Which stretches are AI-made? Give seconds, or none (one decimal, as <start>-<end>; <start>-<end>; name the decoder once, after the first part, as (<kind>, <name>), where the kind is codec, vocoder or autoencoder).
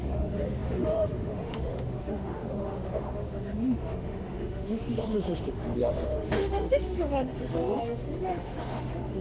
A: 0.0-9.2 (autoencoder, DAC-VAE)